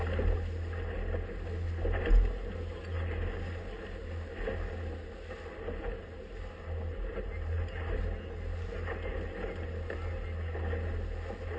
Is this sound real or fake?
real